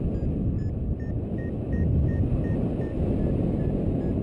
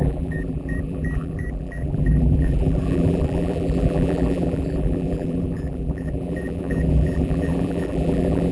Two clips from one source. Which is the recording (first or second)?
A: first